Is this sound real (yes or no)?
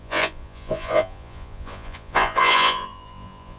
no